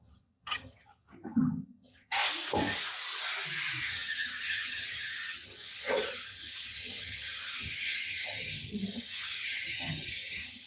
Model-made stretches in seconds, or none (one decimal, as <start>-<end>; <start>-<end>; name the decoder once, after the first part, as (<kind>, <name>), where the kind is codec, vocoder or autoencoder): 0.0-2.2 (vocoder, HiFi-GAN); 3.8-10.7